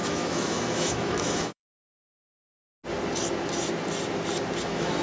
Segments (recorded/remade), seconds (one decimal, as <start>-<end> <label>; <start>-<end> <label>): 0.0-2.3 remade; 2.3-4.6 recorded; 4.6-5.0 remade